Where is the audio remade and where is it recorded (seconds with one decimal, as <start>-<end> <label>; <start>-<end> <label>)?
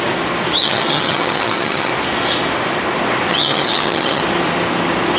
0.0-0.6 recorded; 0.6-1.9 remade; 1.9-3.3 recorded; 3.3-4.2 remade; 4.2-5.2 recorded